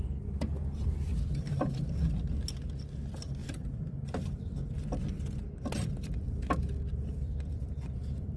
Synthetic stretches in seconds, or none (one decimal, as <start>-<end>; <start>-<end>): 1.5-2.0; 3.4-8.4